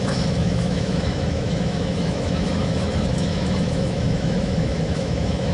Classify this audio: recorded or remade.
remade